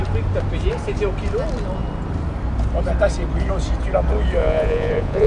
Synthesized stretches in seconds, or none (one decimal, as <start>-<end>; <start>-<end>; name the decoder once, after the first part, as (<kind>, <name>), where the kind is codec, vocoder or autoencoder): 4.4-5.3 (vocoder, Vocos)